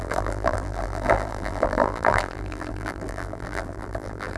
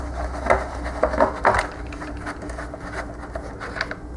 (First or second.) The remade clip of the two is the first